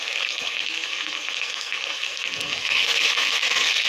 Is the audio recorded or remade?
remade